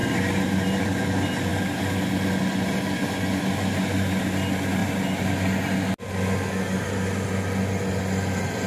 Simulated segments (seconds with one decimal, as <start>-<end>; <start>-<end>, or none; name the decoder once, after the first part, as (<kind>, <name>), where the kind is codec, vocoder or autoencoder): 0.0-0.9 (vocoder, BigVGAN v2)